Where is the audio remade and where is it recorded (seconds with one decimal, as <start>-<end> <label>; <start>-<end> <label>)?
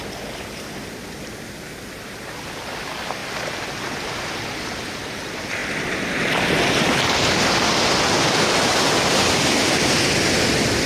0.0-10.9 recorded